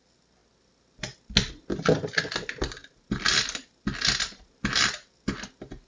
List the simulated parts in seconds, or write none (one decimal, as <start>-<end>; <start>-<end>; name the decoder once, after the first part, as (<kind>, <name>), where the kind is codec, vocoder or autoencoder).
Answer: none